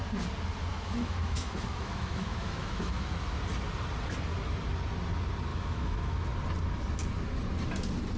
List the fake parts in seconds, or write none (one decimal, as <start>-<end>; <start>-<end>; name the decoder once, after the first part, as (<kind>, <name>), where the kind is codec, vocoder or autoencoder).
0.7-3.0 (autoencoder, DAC-VAE); 5.5-6.2